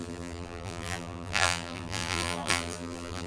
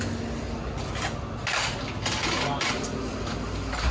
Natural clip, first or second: second